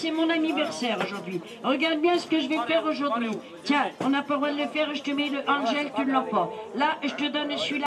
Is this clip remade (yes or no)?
no